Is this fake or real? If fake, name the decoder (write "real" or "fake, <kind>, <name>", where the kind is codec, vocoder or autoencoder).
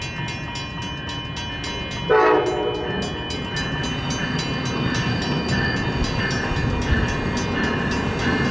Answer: real